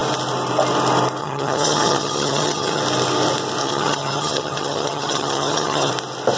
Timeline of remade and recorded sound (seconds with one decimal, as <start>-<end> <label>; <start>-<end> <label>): 0.0-1.2 recorded; 1.2-2.8 remade; 2.8-3.6 recorded; 3.6-5.9 remade; 5.9-6.4 recorded